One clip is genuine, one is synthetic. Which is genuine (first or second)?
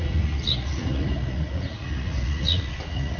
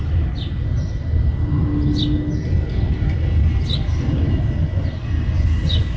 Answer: second